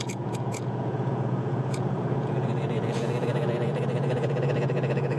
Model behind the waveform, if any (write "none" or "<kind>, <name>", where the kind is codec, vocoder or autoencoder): vocoder, Vocos